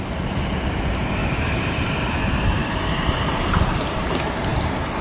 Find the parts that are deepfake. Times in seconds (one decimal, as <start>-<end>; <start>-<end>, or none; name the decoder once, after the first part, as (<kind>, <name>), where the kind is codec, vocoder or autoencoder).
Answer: 1.2-1.9 (vocoder, BigVGAN v2); 2.6-3.1